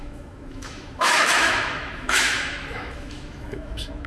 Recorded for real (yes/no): no